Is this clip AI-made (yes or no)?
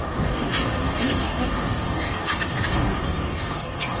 yes